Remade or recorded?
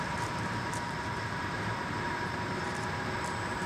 remade